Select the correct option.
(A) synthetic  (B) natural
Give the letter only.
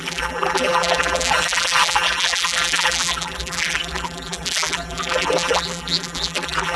A